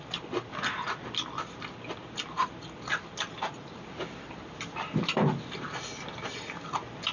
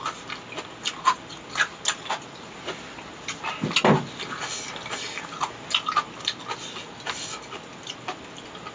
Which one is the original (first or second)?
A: second